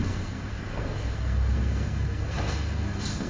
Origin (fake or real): fake